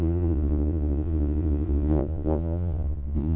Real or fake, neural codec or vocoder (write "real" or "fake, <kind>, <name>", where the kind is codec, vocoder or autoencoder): fake, vocoder, Vocos